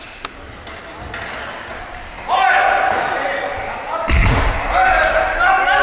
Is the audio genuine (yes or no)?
yes